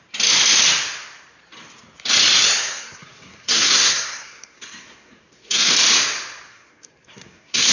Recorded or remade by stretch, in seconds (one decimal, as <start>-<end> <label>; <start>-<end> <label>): 0.0-2.6 recorded; 2.6-5.7 remade; 5.7-6.5 recorded; 6.5-7.7 remade